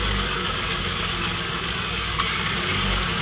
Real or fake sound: fake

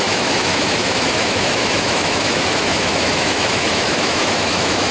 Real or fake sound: fake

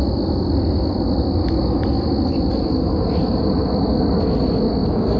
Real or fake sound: real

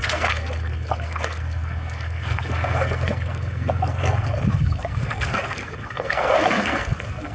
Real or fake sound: fake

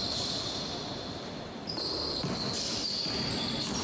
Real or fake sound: real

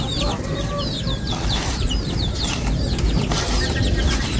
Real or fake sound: real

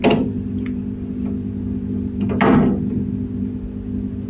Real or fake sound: real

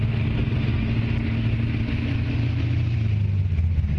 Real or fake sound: real